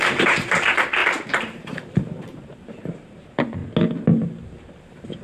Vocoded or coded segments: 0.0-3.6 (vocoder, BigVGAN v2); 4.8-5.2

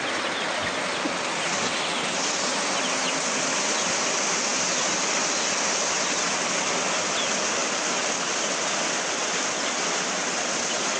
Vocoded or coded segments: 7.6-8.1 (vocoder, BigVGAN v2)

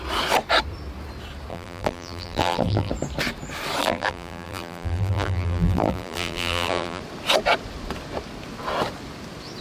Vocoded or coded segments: 1.5-2.9 (vocoder, BigVGAN v2); 3.8-7.0

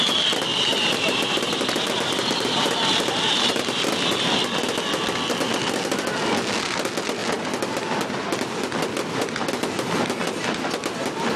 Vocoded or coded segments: 0.5-3.8 (vocoder, BigVGAN v2)

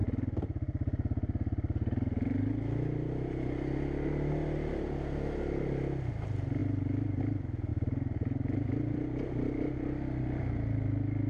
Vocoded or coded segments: 7.7-10.4 (vocoder, BigVGAN v2)